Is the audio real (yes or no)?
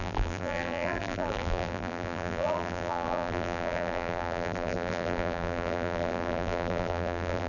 no